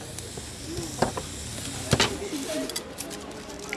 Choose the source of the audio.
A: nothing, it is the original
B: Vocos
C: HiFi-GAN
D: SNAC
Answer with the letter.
A